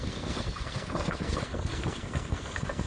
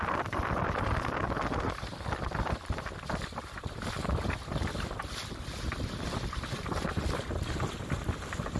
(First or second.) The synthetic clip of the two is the first